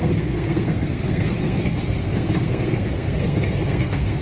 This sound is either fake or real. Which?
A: fake